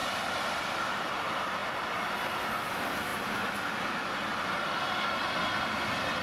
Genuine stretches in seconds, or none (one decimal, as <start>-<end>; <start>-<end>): 0.0-6.2